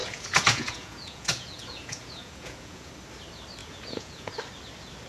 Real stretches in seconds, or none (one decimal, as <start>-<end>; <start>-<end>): 2.9-3.6; 4.3-5.1

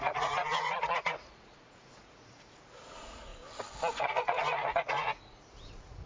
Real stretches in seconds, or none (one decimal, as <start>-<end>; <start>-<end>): 3.3-4.0

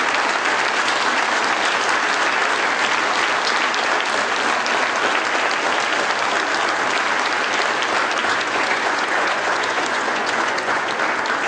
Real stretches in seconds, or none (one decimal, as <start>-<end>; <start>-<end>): 0.0-8.2; 10.9-11.5